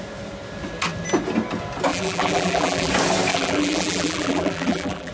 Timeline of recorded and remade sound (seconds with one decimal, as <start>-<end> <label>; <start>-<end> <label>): 0.0-1.9 recorded; 1.9-2.9 remade; 2.9-3.3 recorded; 3.3-5.1 remade